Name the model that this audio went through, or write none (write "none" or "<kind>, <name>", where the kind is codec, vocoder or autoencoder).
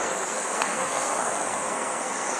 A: codec, SNAC